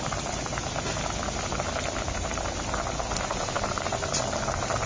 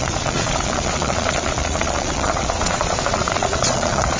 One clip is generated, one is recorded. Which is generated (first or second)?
second